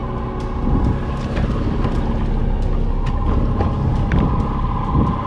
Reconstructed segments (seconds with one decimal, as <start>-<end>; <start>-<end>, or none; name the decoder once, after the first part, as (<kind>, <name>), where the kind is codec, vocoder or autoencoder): none